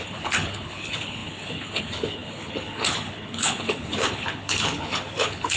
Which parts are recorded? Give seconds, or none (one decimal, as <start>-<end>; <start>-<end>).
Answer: none